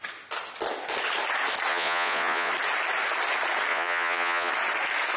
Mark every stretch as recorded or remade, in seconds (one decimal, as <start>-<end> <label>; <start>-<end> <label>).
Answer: 0.0-1.7 recorded; 1.7-2.5 remade; 2.5-3.7 recorded; 3.7-4.5 remade; 4.5-5.2 recorded